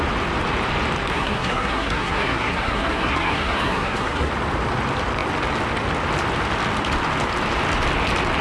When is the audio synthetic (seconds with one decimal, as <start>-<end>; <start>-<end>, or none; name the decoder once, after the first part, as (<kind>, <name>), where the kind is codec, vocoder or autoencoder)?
1.1-4.3 (codec, SNAC)